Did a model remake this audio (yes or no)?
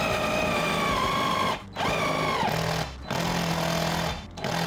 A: no